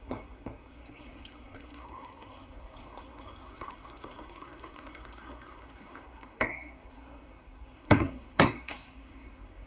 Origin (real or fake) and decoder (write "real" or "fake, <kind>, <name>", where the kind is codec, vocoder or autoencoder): fake, codec, SNAC